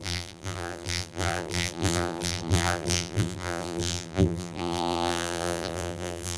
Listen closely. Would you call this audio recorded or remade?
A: remade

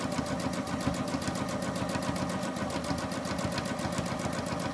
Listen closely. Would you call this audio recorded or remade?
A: recorded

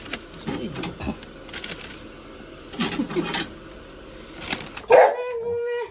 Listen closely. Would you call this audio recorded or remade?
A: recorded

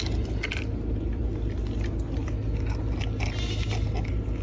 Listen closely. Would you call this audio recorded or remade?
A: recorded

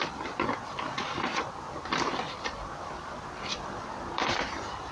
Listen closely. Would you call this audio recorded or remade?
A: remade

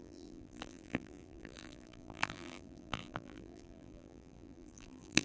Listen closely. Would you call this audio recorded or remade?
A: remade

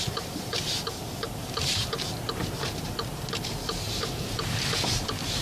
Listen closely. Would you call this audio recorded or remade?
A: remade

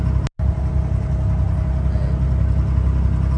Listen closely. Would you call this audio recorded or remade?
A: recorded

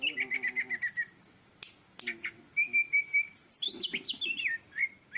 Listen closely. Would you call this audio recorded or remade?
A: recorded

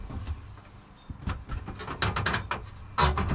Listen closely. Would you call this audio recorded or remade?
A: recorded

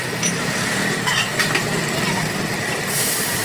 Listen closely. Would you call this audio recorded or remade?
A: recorded